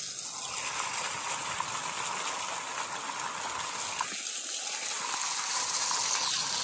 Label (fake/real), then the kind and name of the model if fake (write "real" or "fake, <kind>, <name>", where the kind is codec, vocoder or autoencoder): real